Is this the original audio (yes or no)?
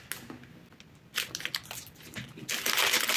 yes